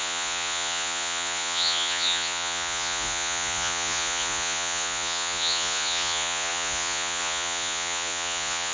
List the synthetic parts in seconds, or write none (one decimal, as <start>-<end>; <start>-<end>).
0.0-8.7